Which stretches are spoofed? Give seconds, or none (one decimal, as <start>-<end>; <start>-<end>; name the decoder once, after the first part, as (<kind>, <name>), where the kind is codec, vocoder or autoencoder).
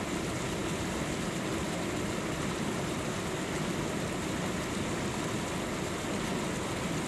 none